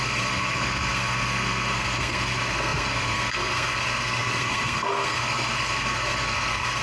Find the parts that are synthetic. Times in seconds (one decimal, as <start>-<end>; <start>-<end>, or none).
0.0-6.8